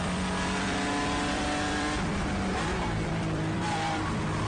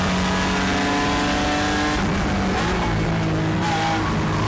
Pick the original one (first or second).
second